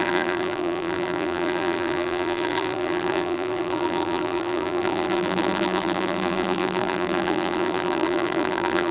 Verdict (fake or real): fake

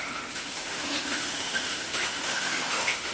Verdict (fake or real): fake